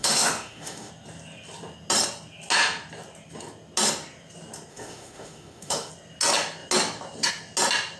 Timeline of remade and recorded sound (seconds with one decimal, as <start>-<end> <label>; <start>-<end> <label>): 0.0-0.9 remade; 0.9-4.7 recorded; 4.7-5.9 remade; 5.9-8.0 recorded